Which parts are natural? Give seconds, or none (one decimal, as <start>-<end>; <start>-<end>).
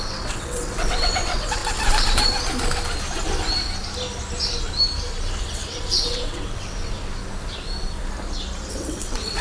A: 1.6-5.4; 7.2-8.7